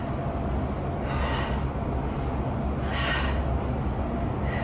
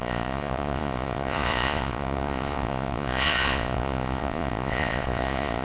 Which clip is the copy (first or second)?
second